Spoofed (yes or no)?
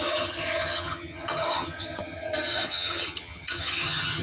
yes